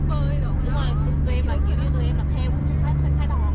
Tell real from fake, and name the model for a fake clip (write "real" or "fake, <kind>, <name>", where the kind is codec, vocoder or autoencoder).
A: real